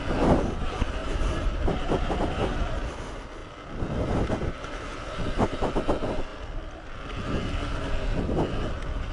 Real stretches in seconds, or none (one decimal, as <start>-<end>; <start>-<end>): 0.0-1.0; 2.1-9.1